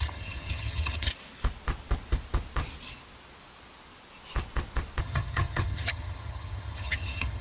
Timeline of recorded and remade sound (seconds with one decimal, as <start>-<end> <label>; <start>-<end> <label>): 0.0-1.1 remade; 1.1-5.0 recorded; 5.0-7.4 remade